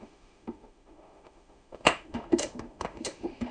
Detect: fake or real fake